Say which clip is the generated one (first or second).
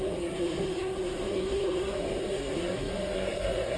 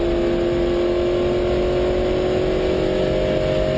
first